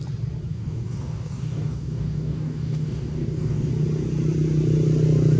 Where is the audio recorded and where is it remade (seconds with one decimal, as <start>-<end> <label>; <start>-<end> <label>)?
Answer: 0.0-0.5 recorded; 0.5-3.7 remade; 3.7-5.4 recorded